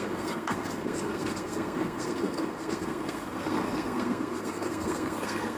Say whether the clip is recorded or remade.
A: remade